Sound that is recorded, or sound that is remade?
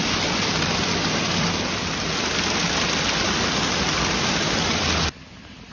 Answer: recorded